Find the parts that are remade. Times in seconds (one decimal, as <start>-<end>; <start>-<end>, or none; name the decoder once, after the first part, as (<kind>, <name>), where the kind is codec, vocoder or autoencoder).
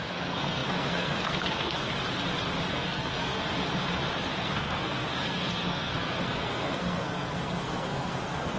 0.0-1.9 (codec, SNAC); 2.7-3.6; 4.3-8.6